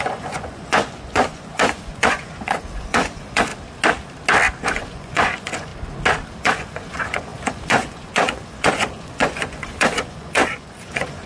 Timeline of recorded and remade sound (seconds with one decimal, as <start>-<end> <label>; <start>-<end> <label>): 0.0-3.5 remade; 3.5-4.6 recorded; 4.6-5.7 remade; 5.7-6.4 recorded; 6.4-11.3 remade

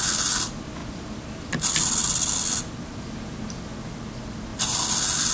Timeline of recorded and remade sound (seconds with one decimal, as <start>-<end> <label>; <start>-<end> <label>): 0.0-5.3 recorded

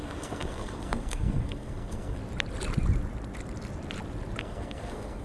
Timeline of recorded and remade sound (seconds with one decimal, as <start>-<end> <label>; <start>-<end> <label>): 0.0-2.2 remade; 2.2-4.4 recorded; 4.4-5.2 remade